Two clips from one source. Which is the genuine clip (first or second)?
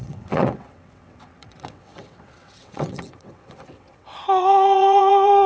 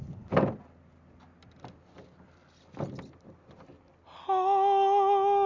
second